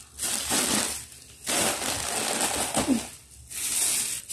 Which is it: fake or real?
real